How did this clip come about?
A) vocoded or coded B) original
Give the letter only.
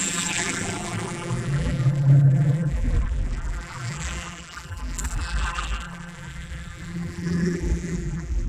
A